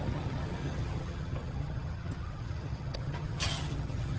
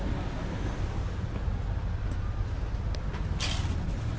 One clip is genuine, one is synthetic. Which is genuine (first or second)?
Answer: second